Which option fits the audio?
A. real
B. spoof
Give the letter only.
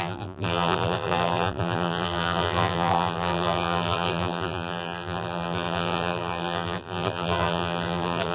B